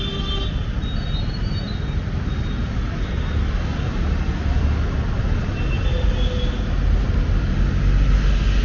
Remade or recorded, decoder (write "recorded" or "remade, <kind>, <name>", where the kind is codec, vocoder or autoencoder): recorded